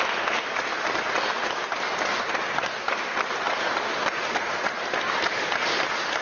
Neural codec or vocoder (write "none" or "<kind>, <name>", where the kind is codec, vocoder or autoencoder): none